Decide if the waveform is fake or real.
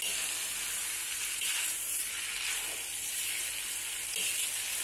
real